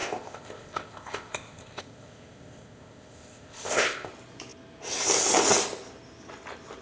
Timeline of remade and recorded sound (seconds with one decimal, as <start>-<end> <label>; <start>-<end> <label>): 0.0-4.1 remade; 4.1-6.8 recorded

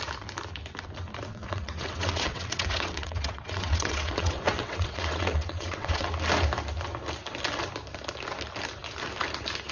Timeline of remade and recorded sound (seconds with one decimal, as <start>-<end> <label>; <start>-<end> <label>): 0.0-1.3 recorded; 1.3-6.1 remade; 6.1-9.7 recorded

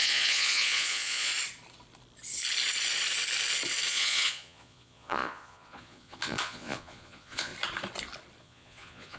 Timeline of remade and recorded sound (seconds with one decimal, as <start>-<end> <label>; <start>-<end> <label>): 0.0-1.3 remade; 1.3-3.9 recorded; 3.9-7.5 remade; 7.5-8.4 recorded; 8.4-9.2 remade

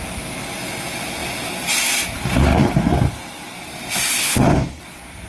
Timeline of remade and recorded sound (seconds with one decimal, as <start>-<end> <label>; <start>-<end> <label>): 0.0-4.2 recorded; 4.2-4.8 remade; 4.8-5.3 recorded

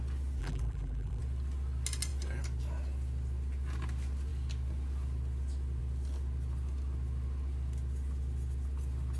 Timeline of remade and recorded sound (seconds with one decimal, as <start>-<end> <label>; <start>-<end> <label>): 0.0-0.4 recorded; 0.4-1.2 remade; 1.2-9.2 recorded